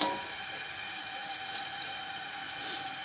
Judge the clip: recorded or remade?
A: recorded